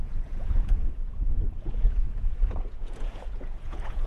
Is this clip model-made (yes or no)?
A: yes